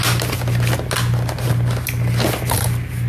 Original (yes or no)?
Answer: yes